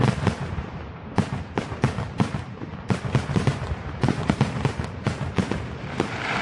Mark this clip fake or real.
fake